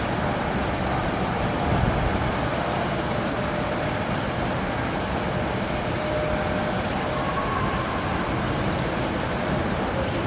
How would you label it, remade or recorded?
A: recorded